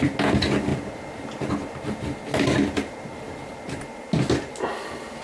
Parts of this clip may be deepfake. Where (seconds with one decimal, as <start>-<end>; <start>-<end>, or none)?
0.7-3.8